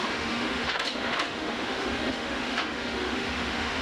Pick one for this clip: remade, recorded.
remade